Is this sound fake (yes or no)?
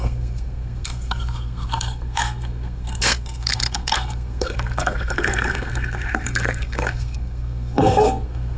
yes